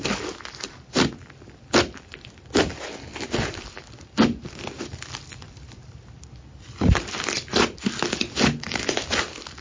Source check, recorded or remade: recorded